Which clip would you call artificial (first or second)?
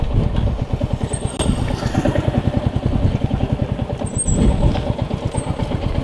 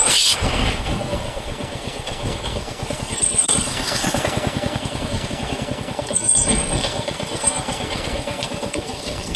second